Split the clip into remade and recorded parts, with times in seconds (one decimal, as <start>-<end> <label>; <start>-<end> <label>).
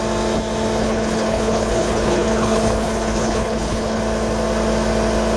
0.0-0.8 recorded; 0.8-4.0 remade; 4.0-5.4 recorded